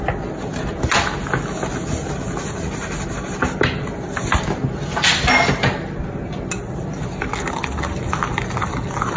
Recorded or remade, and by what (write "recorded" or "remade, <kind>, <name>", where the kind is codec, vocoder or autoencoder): recorded